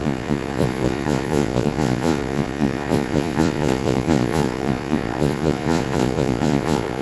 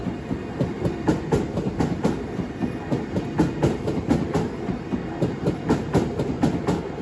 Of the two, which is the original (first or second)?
second